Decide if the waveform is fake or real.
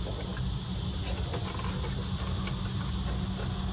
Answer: real